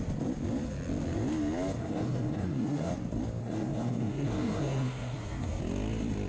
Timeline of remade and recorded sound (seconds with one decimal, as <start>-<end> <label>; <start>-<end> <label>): 0.0-1.8 recorded; 1.8-2.9 remade; 2.9-3.4 recorded; 3.4-5.6 remade; 5.6-6.3 recorded